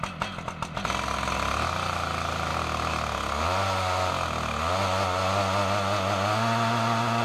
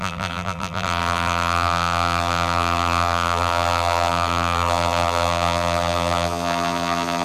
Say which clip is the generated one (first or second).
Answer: second